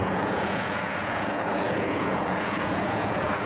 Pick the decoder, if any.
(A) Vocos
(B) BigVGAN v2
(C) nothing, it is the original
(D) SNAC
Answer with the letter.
A